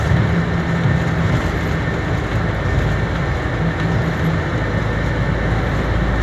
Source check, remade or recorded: recorded